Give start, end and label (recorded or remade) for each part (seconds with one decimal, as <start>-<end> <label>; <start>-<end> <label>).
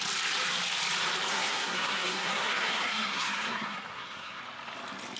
0.0-1.3 recorded; 1.3-4.4 remade; 4.4-5.2 recorded